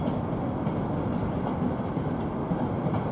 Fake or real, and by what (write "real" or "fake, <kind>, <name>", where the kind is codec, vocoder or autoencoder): real